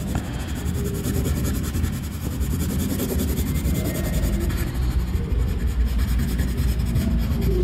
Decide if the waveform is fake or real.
real